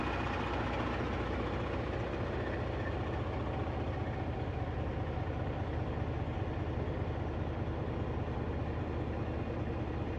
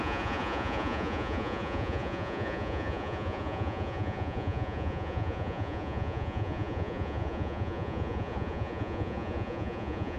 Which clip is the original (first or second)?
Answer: first